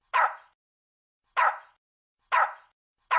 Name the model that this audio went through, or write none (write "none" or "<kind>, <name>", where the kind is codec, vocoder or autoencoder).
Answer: none